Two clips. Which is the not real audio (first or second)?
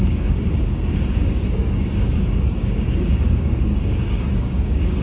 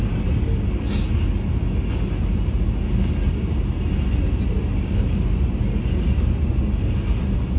first